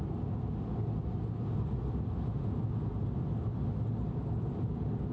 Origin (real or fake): real